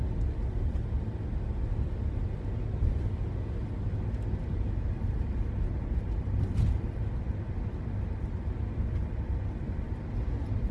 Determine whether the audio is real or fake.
real